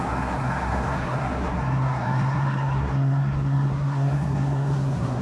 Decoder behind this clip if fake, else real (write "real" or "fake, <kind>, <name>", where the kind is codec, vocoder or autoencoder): fake, codec, SNAC